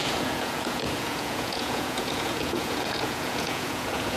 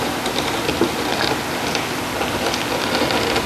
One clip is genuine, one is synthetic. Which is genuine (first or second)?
second